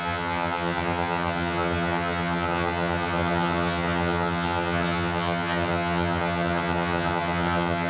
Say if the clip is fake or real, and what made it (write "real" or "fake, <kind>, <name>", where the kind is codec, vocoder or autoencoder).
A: fake, vocoder, HiFi-GAN